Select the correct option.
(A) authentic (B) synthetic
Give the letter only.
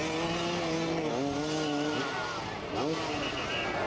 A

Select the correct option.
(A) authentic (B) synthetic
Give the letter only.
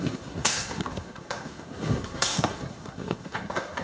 B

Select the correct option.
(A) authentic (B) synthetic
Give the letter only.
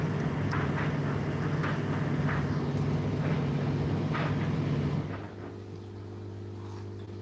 A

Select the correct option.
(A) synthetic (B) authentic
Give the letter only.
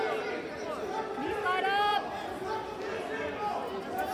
B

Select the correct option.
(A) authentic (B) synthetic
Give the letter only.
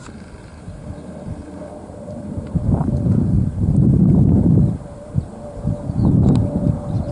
B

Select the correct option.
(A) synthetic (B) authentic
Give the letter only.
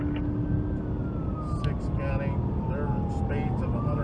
B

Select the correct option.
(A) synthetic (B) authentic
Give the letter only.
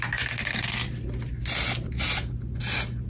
B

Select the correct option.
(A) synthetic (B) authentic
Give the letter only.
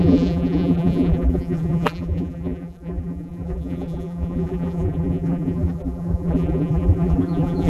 A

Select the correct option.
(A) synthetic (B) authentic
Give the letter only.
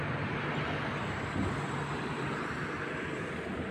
B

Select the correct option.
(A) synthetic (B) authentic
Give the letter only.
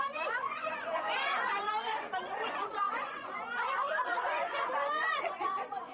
A